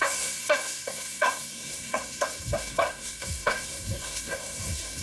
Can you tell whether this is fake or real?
fake